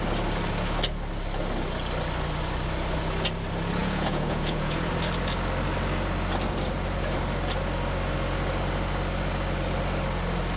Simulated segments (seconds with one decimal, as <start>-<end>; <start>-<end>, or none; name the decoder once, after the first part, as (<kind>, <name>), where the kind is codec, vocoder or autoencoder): 3.8-4.9 (vocoder, Vocos)